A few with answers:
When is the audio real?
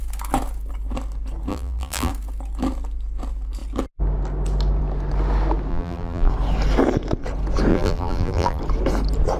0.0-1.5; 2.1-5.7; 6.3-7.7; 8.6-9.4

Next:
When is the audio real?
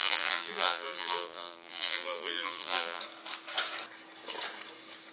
3.0-5.1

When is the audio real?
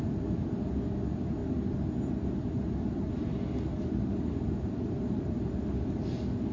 0.0-6.5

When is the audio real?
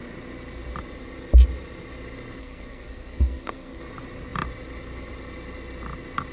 0.0-2.4; 3.8-6.3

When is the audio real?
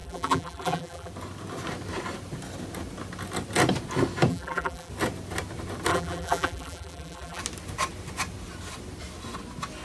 1.1-4.3; 4.9-5.9; 7.4-9.8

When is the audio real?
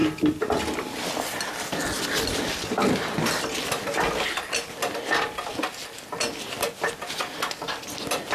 0.0-8.3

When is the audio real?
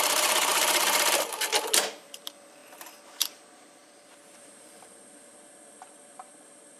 none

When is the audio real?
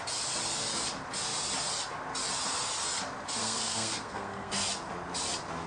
0.0-3.4; 4.5-5.7